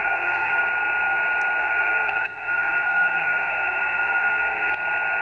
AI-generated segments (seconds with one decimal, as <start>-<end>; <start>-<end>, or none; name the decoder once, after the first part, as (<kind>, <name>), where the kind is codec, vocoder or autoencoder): 0.0-0.6 (codec, SNAC); 1.6-4.7